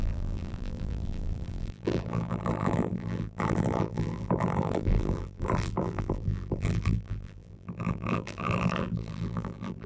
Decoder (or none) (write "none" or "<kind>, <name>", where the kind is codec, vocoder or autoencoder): vocoder, BigVGAN v2